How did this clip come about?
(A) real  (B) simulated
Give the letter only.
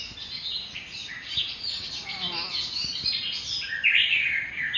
A